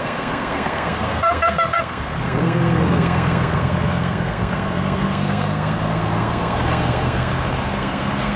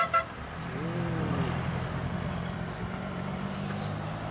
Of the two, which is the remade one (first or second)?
first